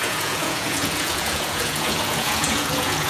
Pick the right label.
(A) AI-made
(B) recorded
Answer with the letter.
A